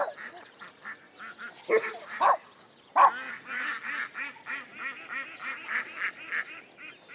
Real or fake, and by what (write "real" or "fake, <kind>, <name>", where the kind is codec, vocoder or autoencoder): real